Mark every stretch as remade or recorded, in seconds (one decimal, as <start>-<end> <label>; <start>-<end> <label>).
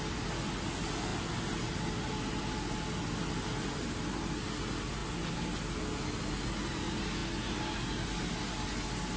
0.0-9.2 recorded